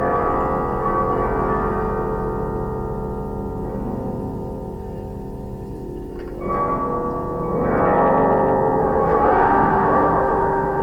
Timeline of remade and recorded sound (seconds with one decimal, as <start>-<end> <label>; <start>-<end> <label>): 0.0-8.8 recorded; 8.8-10.8 remade